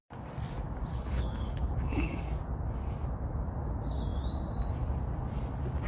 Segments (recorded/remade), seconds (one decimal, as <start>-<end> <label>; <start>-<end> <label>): 0.0-0.9 recorded; 0.9-2.1 remade; 2.1-5.9 recorded